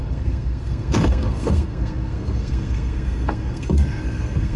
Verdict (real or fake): fake